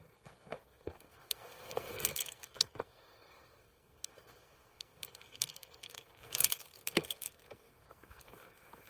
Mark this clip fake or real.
fake